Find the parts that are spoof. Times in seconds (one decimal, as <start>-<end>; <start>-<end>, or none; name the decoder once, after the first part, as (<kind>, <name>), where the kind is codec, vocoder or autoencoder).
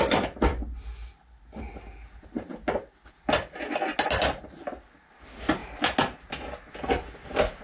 none